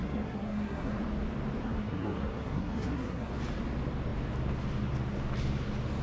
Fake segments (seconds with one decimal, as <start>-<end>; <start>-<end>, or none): 0.0-1.0; 1.6-3.3